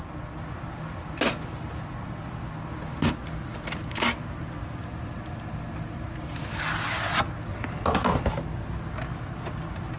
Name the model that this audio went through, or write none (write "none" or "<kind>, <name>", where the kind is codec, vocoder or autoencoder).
none